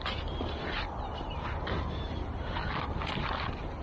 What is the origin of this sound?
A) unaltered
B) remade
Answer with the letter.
A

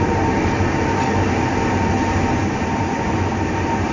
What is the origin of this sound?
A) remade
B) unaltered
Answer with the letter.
B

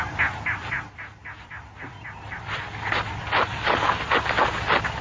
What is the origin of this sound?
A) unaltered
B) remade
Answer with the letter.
A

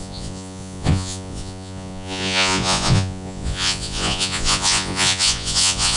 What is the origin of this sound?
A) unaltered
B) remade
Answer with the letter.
B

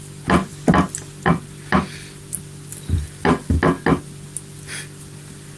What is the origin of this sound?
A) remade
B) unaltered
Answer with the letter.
B